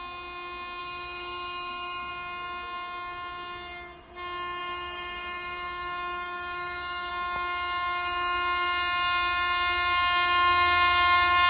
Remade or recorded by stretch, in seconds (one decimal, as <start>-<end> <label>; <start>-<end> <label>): 0.0-0.8 recorded; 0.8-2.1 remade; 2.1-4.6 recorded; 4.6-7.1 remade; 7.1-11.5 recorded